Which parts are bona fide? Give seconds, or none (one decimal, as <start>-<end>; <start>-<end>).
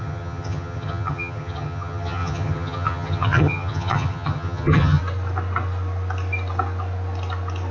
5.0-7.7